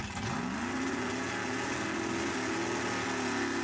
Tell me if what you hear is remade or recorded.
recorded